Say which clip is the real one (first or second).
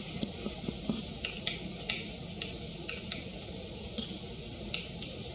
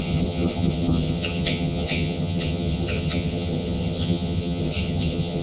first